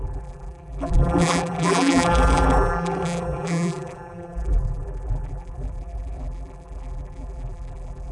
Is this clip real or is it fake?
fake